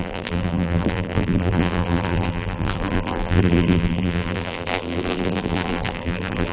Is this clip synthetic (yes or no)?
yes